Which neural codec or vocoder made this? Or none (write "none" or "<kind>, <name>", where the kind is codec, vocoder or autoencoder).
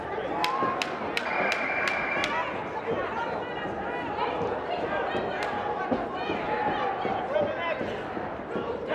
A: none